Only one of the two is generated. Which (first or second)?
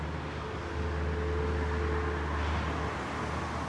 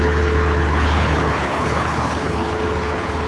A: second